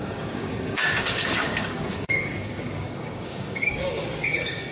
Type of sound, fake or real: fake